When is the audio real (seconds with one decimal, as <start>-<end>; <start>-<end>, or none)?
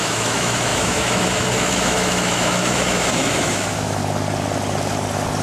4.0-5.4